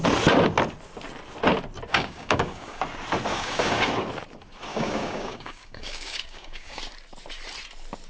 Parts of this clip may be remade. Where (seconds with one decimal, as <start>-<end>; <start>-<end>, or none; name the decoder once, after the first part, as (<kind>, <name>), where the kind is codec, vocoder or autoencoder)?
1.9-2.8 (codec, DAC); 3.3-3.9; 4.7-6.8